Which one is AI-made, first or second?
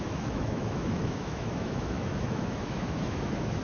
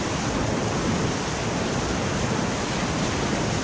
first